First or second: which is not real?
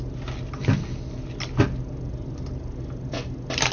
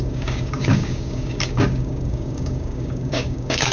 second